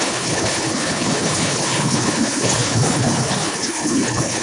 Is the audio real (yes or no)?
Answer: no